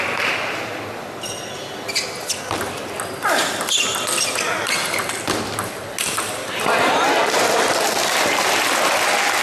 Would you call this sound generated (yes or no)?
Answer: no